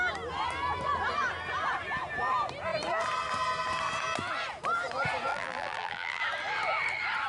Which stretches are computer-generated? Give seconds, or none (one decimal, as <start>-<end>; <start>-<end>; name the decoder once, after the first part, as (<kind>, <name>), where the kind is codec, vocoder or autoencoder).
5.3-6.2 (vocoder, BigVGAN v2)